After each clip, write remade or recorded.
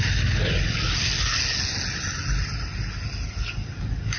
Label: recorded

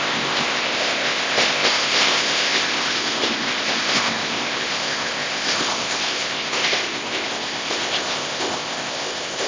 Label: remade